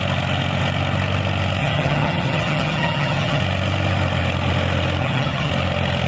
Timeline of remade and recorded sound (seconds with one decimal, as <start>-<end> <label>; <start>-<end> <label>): 0.0-1.6 recorded; 1.6-3.4 remade; 3.4-5.0 recorded; 5.0-5.5 remade; 5.5-6.1 recorded